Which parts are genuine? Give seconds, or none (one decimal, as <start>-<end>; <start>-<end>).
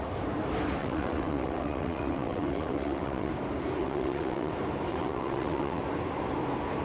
0.0-0.8; 3.3-3.8; 4.5-4.9; 5.8-6.8